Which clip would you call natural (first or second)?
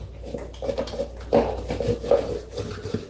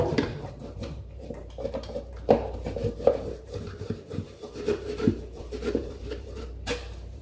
first